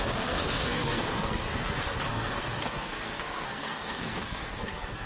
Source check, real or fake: fake